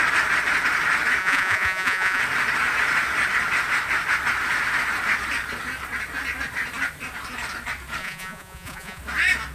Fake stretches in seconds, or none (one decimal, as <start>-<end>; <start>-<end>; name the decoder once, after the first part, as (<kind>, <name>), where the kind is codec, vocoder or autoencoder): 1.2-2.2 (vocoder, Vocos); 8.0-9.0